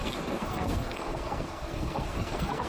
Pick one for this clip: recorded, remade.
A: remade